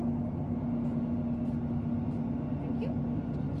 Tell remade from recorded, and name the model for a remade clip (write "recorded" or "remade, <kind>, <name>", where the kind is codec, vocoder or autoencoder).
recorded